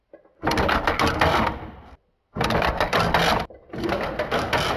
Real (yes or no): yes